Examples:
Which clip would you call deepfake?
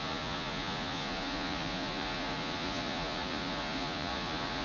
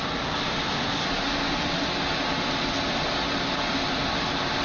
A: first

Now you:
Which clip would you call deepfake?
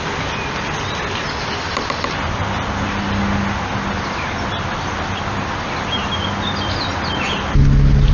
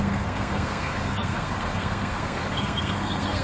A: second